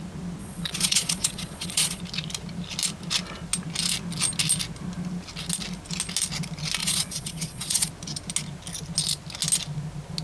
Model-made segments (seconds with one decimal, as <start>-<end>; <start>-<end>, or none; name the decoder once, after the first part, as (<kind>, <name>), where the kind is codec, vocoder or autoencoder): 0.4-2.0 (vocoder, Vocos); 6.8-7.9